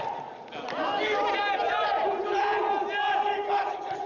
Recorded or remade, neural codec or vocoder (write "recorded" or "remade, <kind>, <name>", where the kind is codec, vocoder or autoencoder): recorded